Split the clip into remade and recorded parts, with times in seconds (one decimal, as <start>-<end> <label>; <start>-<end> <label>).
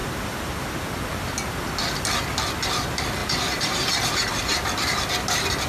0.0-3.2 recorded; 3.2-3.9 remade; 3.9-5.7 recorded